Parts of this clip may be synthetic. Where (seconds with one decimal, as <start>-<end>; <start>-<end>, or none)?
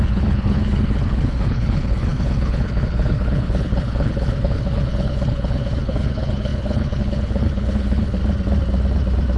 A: 0.0-8.2